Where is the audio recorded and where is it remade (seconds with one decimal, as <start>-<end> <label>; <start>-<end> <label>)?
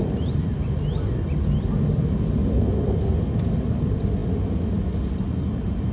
0.0-5.9 recorded